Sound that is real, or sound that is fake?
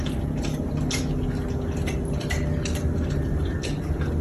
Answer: real